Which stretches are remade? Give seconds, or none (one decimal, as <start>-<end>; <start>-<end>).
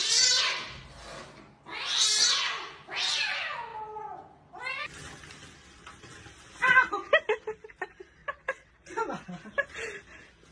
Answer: 8.2-8.7